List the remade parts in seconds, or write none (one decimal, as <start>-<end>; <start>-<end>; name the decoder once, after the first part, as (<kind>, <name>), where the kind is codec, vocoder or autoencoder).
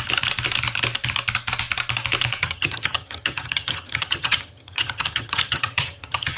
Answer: 2.4-6.4 (vocoder, HiFi-GAN)